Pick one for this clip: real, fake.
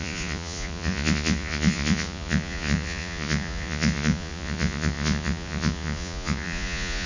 fake